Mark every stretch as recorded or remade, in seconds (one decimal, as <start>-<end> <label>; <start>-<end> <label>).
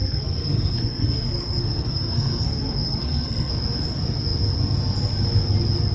0.0-3.5 remade; 3.5-5.9 recorded